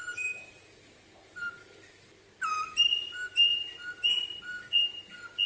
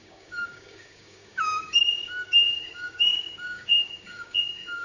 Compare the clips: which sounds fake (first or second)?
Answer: second